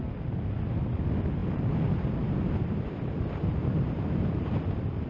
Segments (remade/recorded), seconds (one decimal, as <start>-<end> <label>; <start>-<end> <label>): 0.0-5.1 recorded